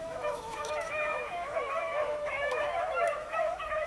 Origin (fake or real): fake